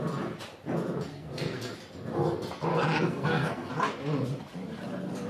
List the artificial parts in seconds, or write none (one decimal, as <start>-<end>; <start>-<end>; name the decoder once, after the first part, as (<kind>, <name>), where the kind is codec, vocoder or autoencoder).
1.1-1.7 (codec, SNAC); 2.7-3.7